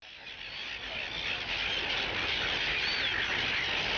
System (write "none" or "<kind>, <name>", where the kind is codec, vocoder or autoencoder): none